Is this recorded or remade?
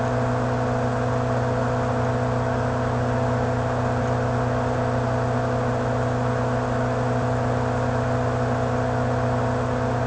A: recorded